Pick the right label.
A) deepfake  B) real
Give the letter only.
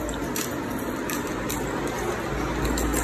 B